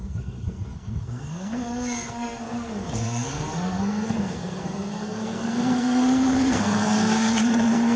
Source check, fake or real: fake